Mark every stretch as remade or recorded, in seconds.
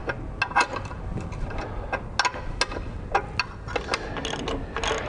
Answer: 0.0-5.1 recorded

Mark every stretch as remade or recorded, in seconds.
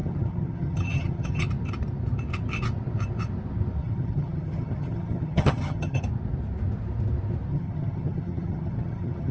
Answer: 0.0-1.4 remade; 1.4-3.8 recorded; 3.8-6.0 remade; 6.0-7.5 recorded; 7.5-9.3 remade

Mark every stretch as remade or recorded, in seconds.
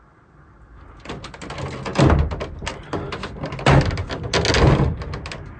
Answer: 0.0-5.6 recorded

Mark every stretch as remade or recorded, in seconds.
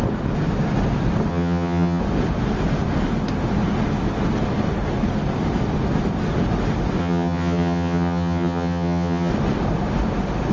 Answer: 0.0-1.3 recorded; 1.3-2.0 remade; 2.0-7.0 recorded; 7.0-9.3 remade; 9.3-10.5 recorded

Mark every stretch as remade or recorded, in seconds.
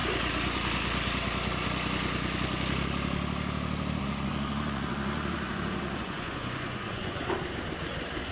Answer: 0.0-4.0 recorded; 4.0-7.2 remade; 7.2-8.3 recorded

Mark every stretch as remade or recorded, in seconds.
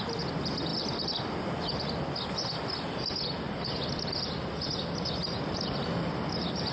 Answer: 0.0-6.7 recorded